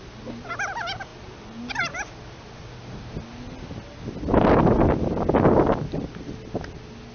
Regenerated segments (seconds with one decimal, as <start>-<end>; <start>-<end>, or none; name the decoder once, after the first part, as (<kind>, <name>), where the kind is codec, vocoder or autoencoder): none